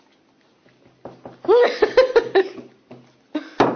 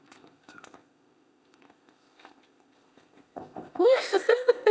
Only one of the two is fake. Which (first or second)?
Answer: second